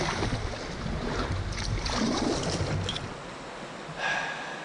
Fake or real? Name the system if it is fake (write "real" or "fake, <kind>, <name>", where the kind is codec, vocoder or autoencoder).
real